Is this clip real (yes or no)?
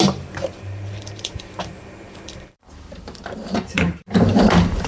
no